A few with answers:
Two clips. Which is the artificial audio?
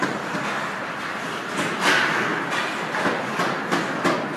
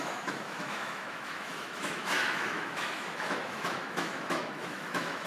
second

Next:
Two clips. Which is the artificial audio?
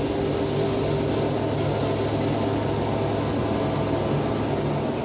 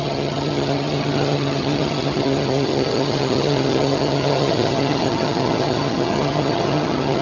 second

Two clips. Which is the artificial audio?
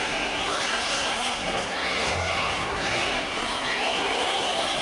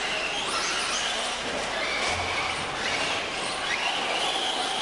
first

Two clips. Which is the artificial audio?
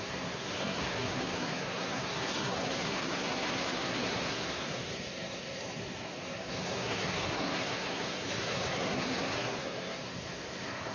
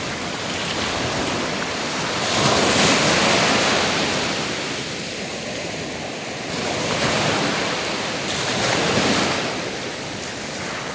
first